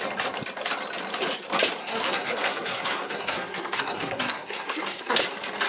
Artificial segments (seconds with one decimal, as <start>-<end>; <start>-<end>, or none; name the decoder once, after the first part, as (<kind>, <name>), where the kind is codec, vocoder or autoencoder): 1.8-5.2 (codec, SNAC)